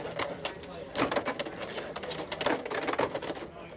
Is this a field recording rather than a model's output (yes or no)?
yes